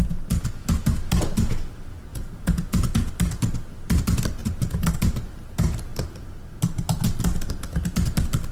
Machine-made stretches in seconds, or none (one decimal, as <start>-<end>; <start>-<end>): 2.1-3.1; 4.4-4.9